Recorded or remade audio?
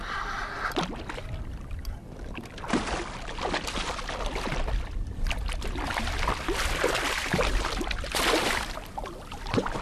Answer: recorded